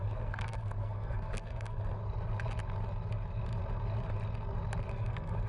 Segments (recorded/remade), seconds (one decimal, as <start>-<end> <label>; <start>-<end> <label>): 0.0-2.0 remade; 2.0-4.9 recorded; 4.9-5.5 remade